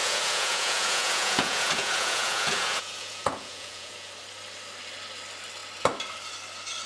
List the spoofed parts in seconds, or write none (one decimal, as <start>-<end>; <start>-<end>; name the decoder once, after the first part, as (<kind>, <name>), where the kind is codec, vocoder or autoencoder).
0.0-4.1 (vocoder, Vocos)